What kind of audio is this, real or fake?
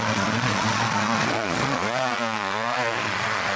fake